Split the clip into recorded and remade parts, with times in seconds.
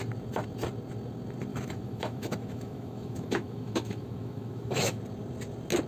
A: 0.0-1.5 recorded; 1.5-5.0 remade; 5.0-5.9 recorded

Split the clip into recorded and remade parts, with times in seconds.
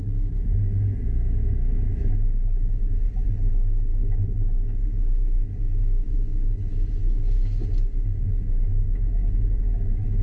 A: 0.0-3.9 remade; 3.9-5.0 recorded; 5.0-10.2 remade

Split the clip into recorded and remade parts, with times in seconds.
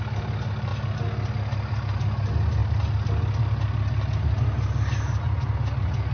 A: 0.0-6.1 recorded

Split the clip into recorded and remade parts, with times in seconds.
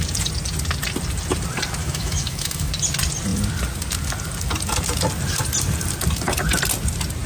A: 0.0-1.8 recorded; 1.8-2.7 remade; 2.7-7.3 recorded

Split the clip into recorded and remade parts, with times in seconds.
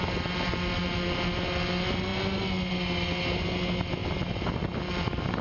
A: 0.0-5.4 recorded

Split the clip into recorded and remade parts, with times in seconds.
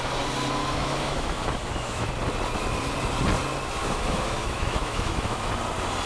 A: 0.0-0.6 recorded; 0.6-2.1 remade; 2.1-3.8 recorded; 3.8-5.5 remade; 5.5-6.1 recorded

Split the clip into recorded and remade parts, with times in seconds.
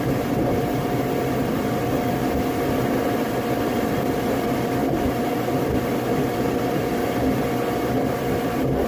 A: 0.0-8.9 recorded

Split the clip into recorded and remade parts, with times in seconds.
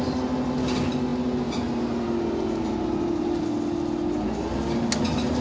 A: 0.0-5.4 recorded